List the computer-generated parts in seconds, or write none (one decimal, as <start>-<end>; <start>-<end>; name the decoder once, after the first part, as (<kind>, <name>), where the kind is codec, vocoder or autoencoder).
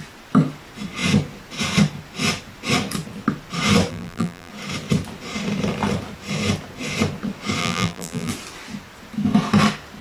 3.9-4.5 (vocoder, BigVGAN v2); 7.6-8.3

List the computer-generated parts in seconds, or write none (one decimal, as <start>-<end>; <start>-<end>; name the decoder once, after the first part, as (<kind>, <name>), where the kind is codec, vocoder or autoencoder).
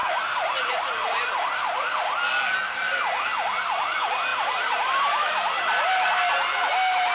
0.0-1.4 (vocoder, BigVGAN v2); 4.3-6.2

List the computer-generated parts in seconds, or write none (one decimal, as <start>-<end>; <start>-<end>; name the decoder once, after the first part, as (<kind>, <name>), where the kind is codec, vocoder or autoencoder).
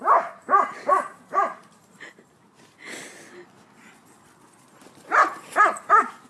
0.0-2.6 (vocoder, BigVGAN v2)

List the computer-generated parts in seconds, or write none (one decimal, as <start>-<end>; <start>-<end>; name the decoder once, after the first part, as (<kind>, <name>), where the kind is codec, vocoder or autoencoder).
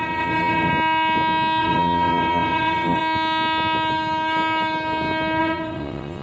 0.0-0.7 (vocoder, WaveNeXt); 1.6-3.0; 5.4-6.2